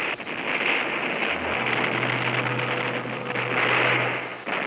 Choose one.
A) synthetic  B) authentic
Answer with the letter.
B